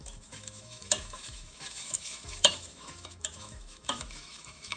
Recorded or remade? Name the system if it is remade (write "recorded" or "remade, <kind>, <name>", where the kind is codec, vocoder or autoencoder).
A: remade, autoencoder, DAC-VAE